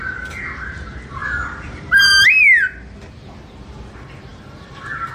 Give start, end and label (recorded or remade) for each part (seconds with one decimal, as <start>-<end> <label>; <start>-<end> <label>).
0.0-1.2 recorded; 1.2-2.0 remade; 2.0-4.3 recorded; 4.3-5.1 remade

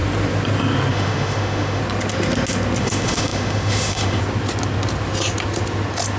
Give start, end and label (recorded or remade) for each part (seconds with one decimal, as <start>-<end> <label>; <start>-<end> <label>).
0.0-0.9 recorded; 0.9-1.8 remade; 1.8-2.8 recorded; 2.8-4.2 remade; 4.2-6.2 recorded